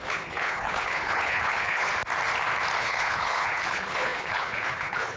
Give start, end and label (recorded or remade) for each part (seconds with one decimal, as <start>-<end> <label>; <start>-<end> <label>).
0.0-1.9 remade; 1.9-2.8 recorded; 2.8-5.2 remade